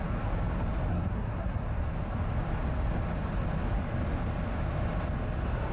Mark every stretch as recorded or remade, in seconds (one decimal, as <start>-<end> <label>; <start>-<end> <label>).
0.0-0.9 recorded; 0.9-1.6 remade; 1.6-5.7 recorded